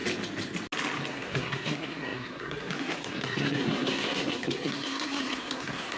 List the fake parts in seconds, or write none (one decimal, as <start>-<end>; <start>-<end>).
1.1-6.0